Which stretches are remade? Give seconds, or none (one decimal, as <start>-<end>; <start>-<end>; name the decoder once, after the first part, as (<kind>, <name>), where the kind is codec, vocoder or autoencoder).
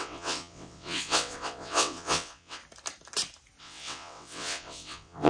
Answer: 0.0-2.6 (vocoder, WaveNeXt); 3.6-5.3